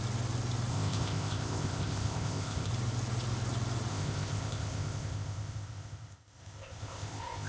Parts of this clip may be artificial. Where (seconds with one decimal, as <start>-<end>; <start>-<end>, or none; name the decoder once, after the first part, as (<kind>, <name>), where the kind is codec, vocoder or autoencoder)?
0.7-2.7 (codec, ZipCodec); 3.9-7.5